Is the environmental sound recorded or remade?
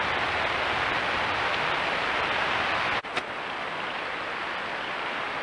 recorded